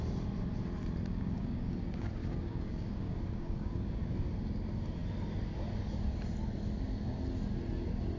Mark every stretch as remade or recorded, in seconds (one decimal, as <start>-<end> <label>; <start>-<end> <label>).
0.0-1.1 recorded; 1.1-4.0 remade; 4.0-8.2 recorded